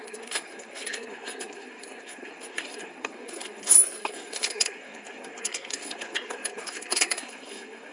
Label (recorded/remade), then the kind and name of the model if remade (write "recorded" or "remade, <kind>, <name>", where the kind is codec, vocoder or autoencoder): remade, codec, SNAC